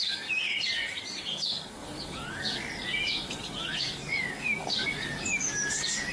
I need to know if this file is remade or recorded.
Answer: remade